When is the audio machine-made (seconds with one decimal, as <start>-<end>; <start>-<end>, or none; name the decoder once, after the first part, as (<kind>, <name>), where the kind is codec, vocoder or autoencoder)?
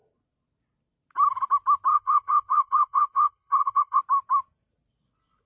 1.9-4.0 (codec, HILCodec)